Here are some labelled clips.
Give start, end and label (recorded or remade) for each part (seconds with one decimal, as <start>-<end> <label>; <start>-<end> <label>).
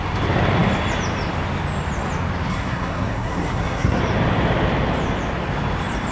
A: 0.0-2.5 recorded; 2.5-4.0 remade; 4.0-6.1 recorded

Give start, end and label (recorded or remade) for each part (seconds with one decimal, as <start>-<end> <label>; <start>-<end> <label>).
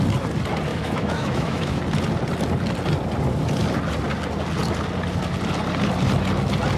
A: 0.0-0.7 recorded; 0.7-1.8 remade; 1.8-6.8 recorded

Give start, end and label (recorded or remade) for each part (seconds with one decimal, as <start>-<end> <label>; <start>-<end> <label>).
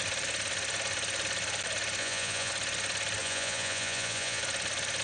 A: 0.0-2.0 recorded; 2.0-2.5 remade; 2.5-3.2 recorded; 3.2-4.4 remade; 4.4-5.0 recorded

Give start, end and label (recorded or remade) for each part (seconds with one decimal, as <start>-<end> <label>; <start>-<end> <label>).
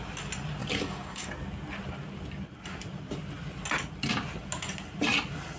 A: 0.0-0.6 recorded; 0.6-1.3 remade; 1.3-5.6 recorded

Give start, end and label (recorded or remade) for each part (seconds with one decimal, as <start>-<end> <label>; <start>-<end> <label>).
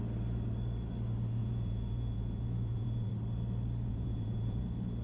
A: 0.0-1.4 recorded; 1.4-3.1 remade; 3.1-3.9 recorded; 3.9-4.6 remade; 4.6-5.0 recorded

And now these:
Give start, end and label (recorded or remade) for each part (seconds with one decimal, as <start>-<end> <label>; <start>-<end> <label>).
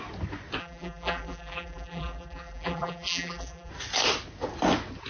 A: 0.0-0.6 recorded; 0.6-3.7 remade; 3.7-5.1 recorded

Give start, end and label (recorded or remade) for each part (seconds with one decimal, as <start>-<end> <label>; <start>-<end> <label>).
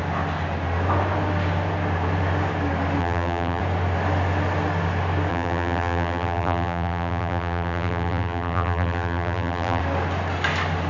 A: 0.0-3.0 recorded; 3.0-3.6 remade; 3.6-5.3 recorded; 5.3-9.8 remade; 9.8-10.9 recorded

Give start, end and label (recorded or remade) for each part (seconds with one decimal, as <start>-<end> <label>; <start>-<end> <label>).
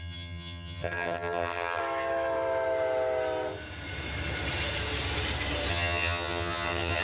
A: 0.0-1.8 remade; 1.8-5.7 recorded; 5.7-7.0 remade